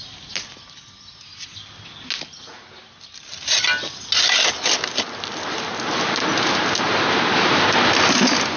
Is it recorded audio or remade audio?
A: recorded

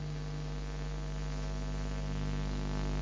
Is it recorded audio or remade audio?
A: remade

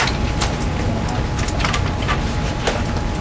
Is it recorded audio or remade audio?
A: recorded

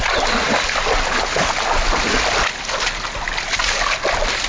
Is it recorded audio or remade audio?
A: recorded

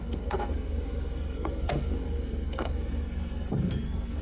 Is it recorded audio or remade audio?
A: remade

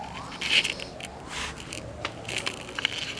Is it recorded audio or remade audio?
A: recorded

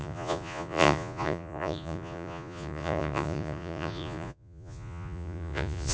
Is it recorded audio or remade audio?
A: remade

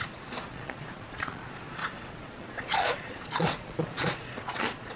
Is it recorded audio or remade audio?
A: remade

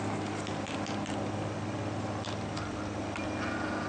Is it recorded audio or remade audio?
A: recorded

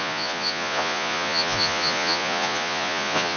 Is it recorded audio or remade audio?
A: remade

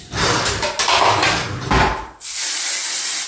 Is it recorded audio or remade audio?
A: recorded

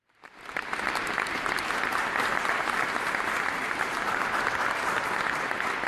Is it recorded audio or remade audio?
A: remade